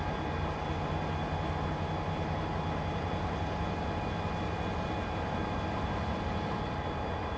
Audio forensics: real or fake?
real